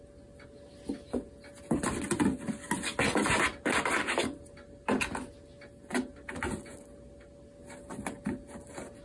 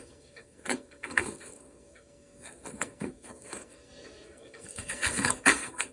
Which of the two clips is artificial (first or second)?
second